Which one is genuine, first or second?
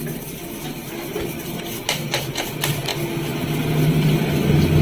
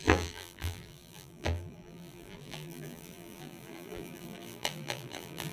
first